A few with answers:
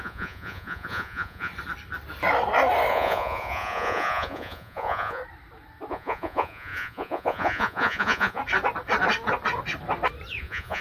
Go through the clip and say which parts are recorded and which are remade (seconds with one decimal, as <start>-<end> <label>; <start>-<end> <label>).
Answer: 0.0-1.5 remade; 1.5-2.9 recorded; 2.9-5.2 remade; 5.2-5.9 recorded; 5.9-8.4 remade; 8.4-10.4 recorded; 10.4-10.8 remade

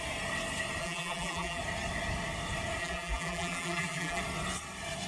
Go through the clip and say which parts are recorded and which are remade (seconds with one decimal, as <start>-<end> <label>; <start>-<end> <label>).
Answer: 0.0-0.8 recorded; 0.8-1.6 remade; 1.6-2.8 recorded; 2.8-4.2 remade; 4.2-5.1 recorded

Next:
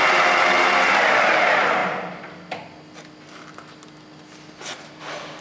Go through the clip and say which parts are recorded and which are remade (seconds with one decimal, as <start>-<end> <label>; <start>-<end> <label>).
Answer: 0.0-5.4 recorded

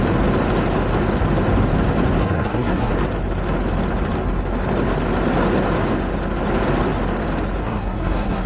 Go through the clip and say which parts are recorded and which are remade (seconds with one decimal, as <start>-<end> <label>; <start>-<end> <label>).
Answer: 0.0-2.2 recorded; 2.2-2.9 remade; 2.9-7.6 recorded; 7.6-8.5 remade